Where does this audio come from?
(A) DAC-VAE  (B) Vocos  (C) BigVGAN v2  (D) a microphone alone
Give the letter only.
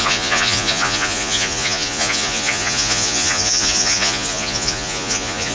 B